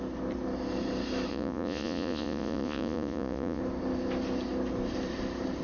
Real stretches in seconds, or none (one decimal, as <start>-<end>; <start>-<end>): 0.0-1.3; 3.6-5.6